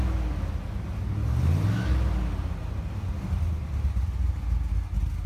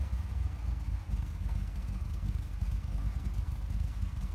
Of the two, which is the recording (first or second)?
first